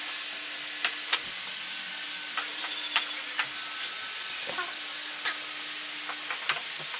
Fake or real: real